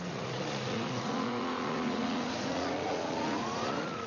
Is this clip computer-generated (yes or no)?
yes